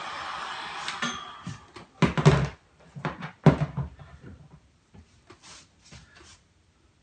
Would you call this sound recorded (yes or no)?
yes